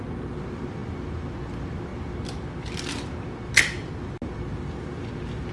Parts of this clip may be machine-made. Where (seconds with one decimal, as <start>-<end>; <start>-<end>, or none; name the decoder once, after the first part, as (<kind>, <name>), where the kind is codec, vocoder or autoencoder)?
none